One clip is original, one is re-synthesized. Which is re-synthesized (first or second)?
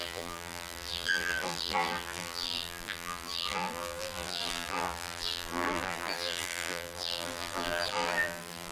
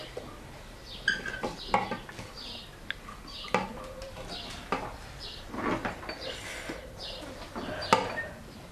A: first